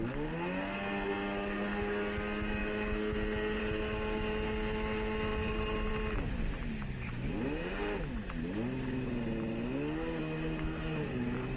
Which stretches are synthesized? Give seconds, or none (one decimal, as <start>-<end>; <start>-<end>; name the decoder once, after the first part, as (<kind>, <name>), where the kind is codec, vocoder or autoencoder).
5.3-5.9 (vocoder, BigVGAN v2)